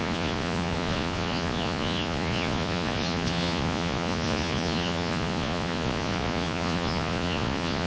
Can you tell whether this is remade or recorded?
remade